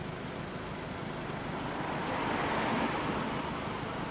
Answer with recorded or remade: recorded